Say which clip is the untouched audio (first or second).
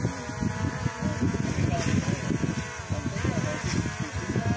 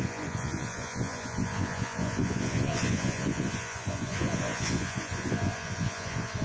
first